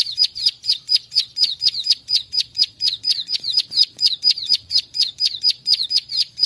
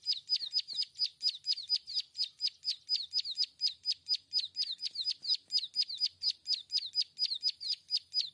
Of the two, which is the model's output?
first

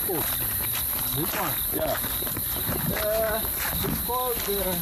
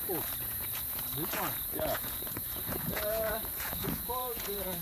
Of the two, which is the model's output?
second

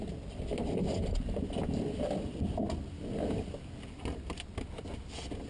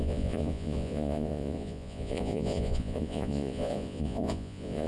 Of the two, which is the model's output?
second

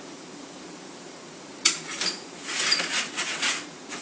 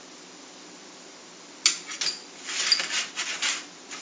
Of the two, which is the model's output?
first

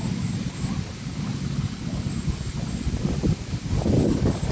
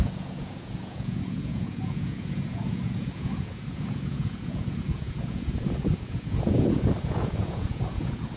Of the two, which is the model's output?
second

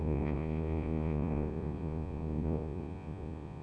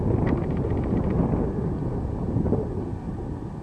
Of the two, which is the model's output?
first